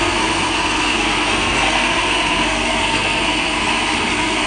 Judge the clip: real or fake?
fake